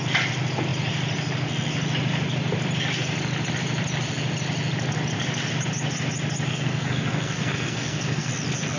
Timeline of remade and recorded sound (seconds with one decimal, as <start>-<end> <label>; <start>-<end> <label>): 0.0-6.5 recorded; 6.5-8.3 remade; 8.3-8.8 recorded